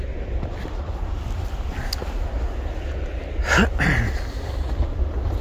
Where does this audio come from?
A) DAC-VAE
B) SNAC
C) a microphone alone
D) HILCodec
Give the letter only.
C